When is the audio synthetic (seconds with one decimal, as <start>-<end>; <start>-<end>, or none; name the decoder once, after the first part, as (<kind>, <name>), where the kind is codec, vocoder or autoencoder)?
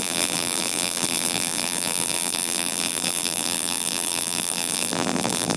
0.0-5.6 (vocoder, BigVGAN v2)